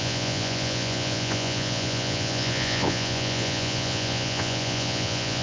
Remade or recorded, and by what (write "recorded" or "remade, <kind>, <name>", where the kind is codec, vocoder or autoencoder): remade, vocoder, Vocos